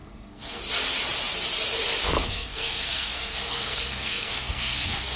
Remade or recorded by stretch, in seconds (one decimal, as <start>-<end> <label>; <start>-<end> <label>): 0.0-0.6 remade; 0.6-2.0 recorded; 2.0-5.2 remade